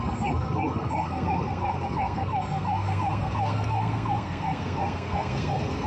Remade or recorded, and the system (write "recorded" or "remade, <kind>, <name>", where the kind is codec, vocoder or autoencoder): remade, codec, SNAC